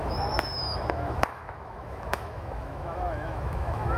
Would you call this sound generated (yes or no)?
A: yes